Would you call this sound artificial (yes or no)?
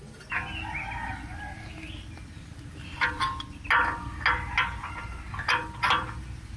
no